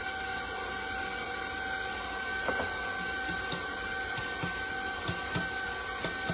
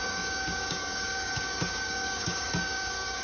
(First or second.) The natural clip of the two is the first